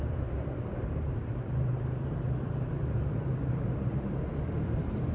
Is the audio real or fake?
fake